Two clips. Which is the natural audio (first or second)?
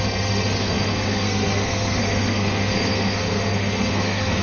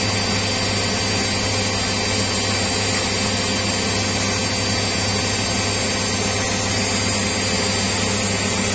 second